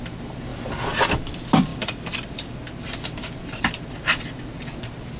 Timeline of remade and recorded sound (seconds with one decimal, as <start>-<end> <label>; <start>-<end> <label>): 0.0-0.5 recorded; 0.5-1.0 remade; 1.0-1.7 recorded; 1.7-4.4 remade; 4.4-5.2 recorded